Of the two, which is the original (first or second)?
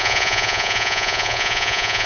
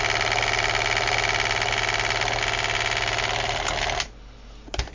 second